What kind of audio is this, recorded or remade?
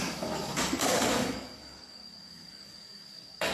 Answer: remade